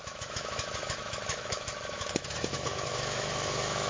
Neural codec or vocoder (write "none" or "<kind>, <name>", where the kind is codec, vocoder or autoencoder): autoencoder, DAC-VAE